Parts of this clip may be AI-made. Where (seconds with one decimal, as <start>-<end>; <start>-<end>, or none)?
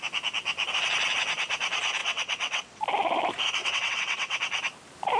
2.0-2.8; 3.6-4.4